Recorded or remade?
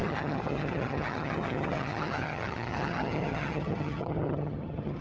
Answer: remade